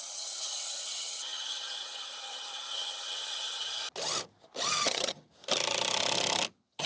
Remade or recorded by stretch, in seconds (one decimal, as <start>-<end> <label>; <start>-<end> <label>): 0.0-3.8 remade; 3.8-4.7 recorded; 4.7-5.3 remade; 5.3-6.5 recorded; 6.5-6.9 remade